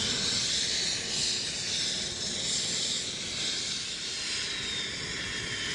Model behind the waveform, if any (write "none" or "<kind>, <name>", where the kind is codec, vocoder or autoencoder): none